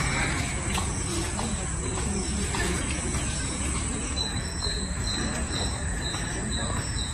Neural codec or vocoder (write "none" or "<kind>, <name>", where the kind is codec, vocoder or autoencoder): vocoder, Vocos